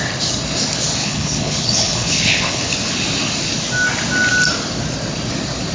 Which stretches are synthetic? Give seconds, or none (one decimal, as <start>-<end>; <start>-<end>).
1.0-2.7